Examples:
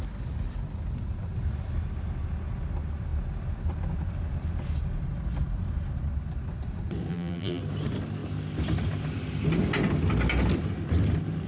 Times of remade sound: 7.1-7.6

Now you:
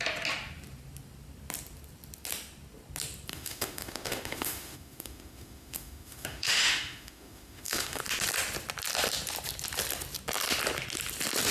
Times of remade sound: 3.3-8.0

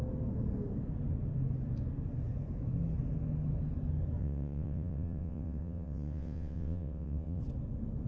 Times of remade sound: 4.2-7.4